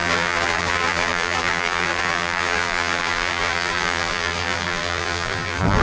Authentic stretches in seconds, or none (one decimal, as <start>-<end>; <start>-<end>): none